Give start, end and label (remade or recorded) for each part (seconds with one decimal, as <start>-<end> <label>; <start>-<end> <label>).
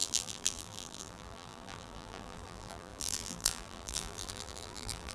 0.0-5.1 remade